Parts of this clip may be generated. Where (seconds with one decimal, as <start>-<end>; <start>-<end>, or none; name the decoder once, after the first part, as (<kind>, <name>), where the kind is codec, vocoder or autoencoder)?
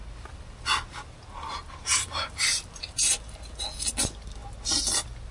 1.8-2.8 (vocoder, BigVGAN v2)